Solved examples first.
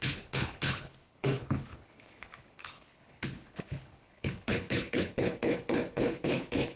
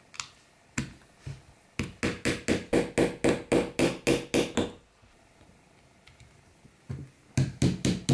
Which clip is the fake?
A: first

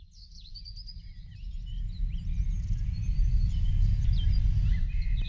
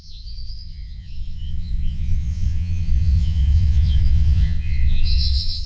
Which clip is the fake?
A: second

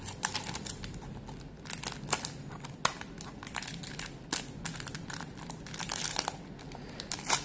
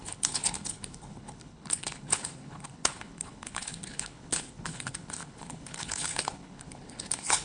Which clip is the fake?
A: second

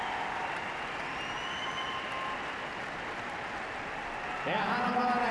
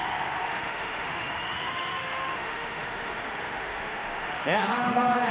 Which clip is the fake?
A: second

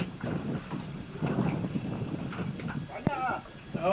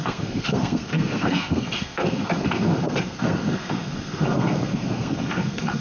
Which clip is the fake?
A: second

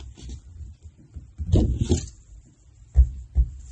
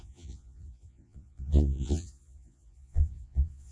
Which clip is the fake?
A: second